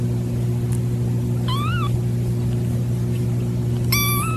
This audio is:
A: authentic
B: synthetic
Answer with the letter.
A